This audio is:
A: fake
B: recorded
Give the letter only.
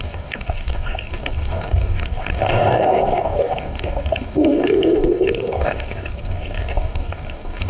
A